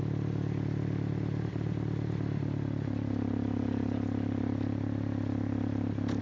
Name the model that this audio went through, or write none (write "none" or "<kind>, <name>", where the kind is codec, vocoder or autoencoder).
none